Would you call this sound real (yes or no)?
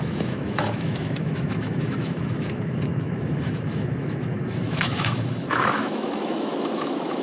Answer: no